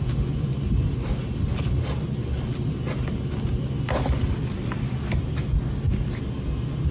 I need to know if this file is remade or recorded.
recorded